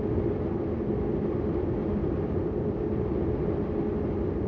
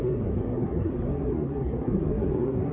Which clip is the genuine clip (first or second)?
first